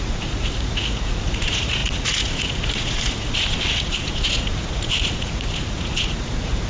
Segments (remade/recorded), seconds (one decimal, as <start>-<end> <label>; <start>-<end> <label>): 0.0-6.7 remade